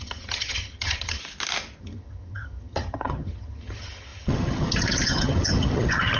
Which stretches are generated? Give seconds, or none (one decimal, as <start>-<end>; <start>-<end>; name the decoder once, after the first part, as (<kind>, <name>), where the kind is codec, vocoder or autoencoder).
0.0-1.2 (vocoder, HiFi-GAN); 1.8-6.2